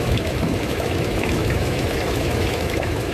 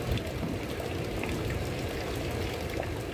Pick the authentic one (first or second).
second